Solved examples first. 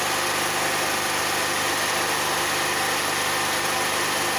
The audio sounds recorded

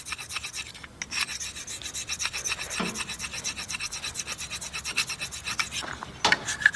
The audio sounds recorded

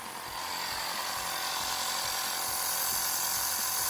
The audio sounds recorded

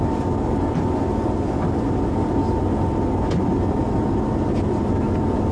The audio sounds recorded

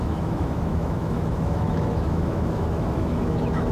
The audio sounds remade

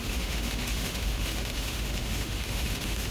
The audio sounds remade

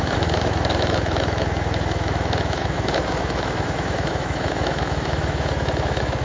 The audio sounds remade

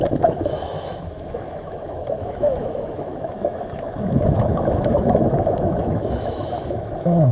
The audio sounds remade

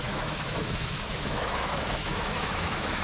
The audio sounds remade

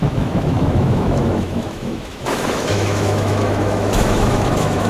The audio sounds remade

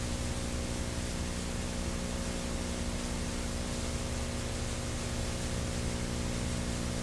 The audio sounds recorded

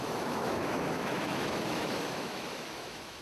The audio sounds remade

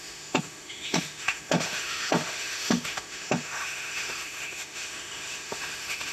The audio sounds remade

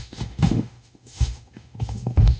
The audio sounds remade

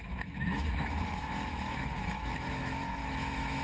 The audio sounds remade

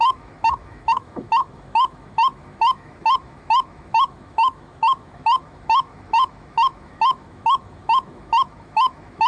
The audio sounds remade